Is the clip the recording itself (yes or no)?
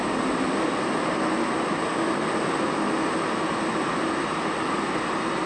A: yes